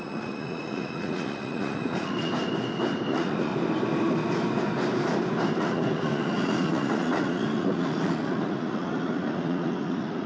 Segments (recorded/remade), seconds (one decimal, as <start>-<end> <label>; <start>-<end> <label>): 0.0-2.3 remade; 2.3-3.1 recorded; 3.1-3.5 remade; 3.5-5.6 recorded; 5.6-10.3 remade